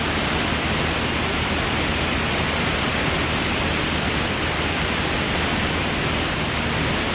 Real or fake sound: real